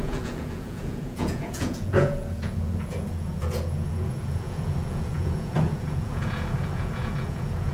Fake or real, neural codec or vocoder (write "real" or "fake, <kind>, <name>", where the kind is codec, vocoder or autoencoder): fake, vocoder, Vocos